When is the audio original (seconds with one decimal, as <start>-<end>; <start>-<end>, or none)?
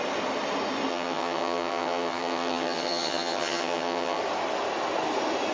0.0-0.9; 4.2-5.5